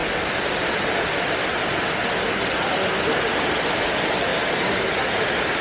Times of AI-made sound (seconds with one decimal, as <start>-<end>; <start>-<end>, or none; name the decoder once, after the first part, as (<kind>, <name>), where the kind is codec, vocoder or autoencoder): 4.3-4.9 (vocoder, BigVGAN v2)